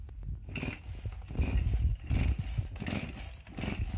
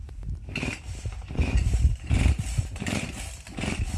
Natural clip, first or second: first